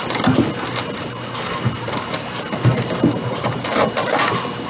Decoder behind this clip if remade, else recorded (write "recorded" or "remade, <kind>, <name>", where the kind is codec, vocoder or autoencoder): recorded